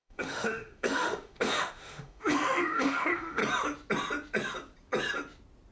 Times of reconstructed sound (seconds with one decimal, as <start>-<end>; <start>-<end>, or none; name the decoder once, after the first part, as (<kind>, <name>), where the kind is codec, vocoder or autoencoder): 0.0-3.4 (autoencoder, DAC-VAE)

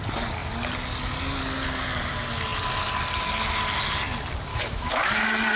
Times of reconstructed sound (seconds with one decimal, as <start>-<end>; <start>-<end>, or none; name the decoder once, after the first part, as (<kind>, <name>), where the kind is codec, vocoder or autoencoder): 4.5-5.1 (autoencoder, DAC-VAE)

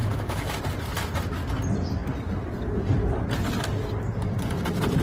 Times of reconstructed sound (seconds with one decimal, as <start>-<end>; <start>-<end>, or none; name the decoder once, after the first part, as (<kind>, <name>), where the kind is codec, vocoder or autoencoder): 0.0-0.6 (autoencoder, DAC-VAE)

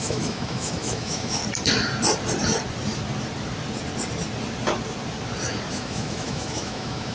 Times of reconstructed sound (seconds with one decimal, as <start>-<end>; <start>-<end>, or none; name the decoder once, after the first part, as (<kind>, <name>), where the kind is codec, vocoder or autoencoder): 0.0-1.4 (autoencoder, DAC-VAE); 5.7-7.1